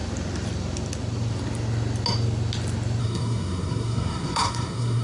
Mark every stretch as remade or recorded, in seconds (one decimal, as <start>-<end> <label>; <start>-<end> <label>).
0.0-3.0 recorded; 3.0-5.0 remade